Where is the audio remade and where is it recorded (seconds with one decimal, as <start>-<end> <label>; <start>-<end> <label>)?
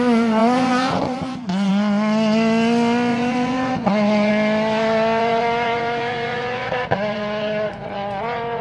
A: 0.0-0.4 recorded; 0.4-1.7 remade; 1.7-3.1 recorded; 3.1-4.3 remade; 4.3-5.2 recorded; 5.2-8.6 remade